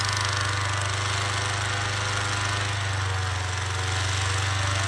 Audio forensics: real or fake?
real